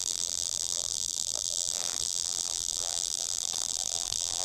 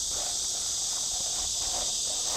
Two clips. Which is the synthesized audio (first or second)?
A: first